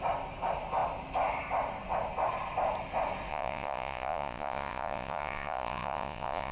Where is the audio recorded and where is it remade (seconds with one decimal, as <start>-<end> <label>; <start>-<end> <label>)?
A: 0.0-3.3 recorded; 3.3-6.5 remade